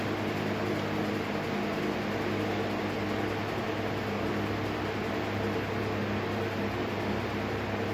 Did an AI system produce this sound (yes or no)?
no